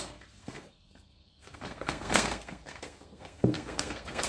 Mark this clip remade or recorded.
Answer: remade